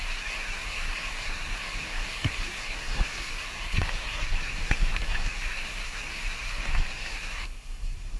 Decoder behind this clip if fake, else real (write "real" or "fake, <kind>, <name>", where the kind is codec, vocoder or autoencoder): fake, codec, SNAC